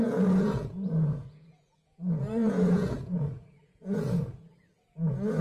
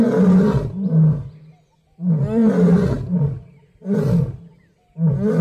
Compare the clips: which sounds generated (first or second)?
first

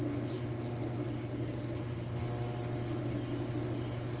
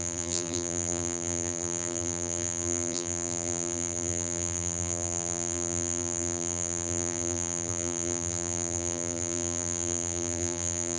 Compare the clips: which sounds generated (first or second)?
second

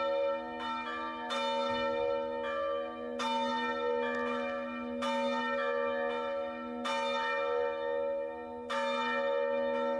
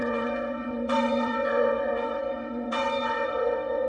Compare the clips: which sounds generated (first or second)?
second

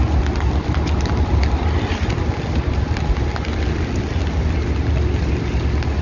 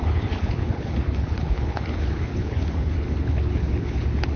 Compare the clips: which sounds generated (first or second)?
second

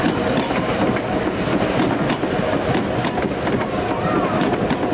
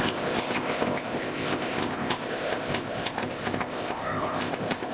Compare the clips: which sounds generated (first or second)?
second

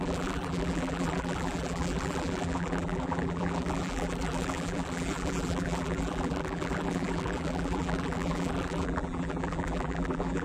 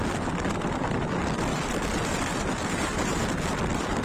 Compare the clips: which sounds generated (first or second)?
first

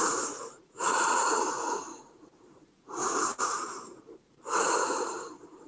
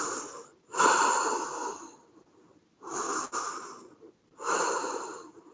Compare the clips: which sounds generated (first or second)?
first